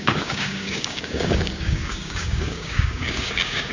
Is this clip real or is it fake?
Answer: fake